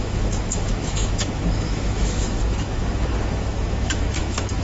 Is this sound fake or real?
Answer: fake